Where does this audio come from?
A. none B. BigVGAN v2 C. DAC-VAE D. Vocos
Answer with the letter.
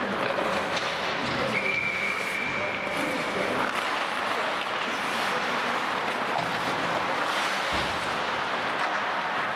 A